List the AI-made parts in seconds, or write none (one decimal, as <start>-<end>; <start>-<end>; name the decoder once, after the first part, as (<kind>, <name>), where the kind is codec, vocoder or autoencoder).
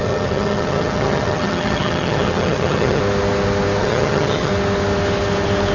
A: 0.0-3.0 (vocoder, HiFi-GAN); 3.8-4.5